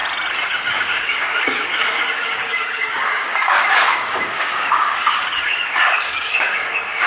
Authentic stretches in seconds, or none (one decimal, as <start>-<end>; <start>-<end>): 0.0-0.7